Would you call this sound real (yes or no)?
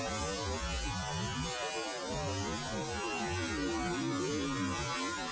yes